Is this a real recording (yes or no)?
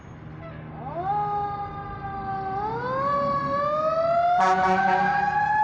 yes